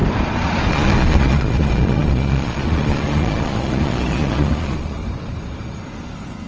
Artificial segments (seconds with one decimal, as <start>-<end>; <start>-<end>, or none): 0.7-5.0